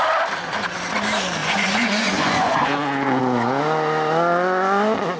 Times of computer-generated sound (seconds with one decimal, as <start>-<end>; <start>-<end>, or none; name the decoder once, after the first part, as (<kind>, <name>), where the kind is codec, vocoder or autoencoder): 1.4-3.2 (vocoder, Vocos)